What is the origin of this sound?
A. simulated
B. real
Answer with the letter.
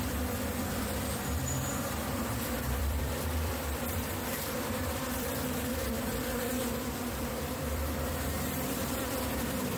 A